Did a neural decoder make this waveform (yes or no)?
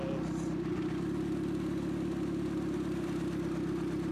no